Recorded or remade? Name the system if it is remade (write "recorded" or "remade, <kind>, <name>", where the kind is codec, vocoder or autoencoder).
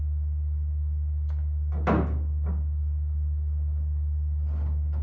recorded